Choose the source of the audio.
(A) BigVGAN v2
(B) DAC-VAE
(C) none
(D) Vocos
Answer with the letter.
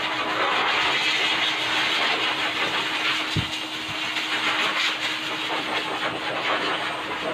C